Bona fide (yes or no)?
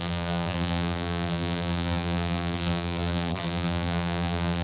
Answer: no